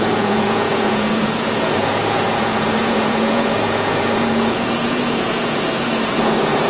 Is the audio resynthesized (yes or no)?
yes